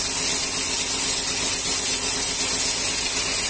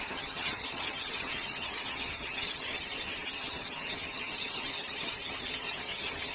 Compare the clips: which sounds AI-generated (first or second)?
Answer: second